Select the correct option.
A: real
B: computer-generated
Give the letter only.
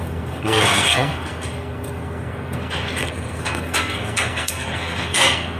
B